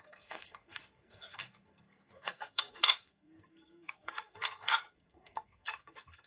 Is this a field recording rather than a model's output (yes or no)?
no